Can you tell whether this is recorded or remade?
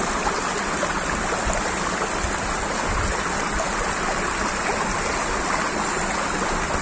recorded